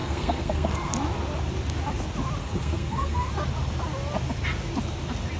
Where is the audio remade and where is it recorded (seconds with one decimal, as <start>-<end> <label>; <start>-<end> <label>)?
0.0-0.9 remade; 0.9-2.4 recorded; 2.4-3.3 remade; 3.3-5.4 recorded